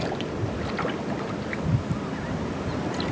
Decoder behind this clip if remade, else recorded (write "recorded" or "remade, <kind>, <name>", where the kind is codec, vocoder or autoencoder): recorded